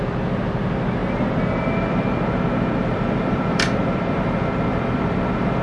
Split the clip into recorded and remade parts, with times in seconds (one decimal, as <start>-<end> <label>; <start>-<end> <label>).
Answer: 0.0-1.0 recorded; 1.0-2.0 remade; 2.0-2.8 recorded; 2.8-5.6 remade